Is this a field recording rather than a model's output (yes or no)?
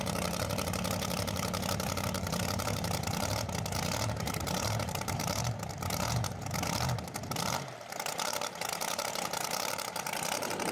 no